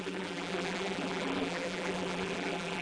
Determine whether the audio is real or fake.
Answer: fake